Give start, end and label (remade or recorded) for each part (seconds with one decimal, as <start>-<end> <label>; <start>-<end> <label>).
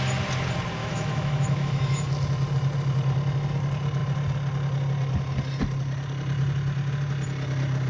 0.0-0.8 recorded; 0.8-2.1 remade; 2.1-7.9 recorded